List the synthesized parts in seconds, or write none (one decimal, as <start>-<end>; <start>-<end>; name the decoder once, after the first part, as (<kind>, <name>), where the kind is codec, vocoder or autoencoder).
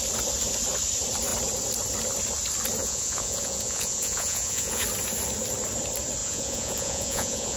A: 2.8-4.8 (vocoder, Vocos); 6.2-7.6